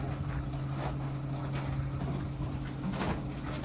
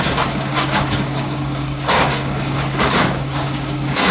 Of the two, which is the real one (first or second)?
first